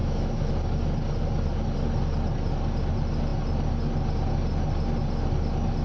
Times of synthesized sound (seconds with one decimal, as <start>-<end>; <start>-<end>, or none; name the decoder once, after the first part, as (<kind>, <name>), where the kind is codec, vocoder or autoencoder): 0.0-0.5 (autoencoder, DAC-VAE)